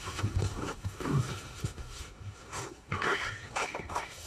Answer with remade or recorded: remade